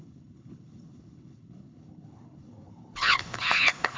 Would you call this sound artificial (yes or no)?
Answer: yes